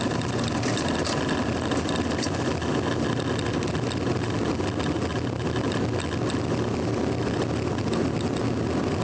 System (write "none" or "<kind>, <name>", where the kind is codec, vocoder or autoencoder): none